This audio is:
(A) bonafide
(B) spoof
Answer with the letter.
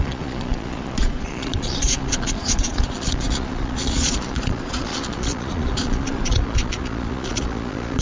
B